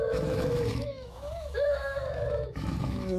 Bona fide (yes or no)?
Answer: no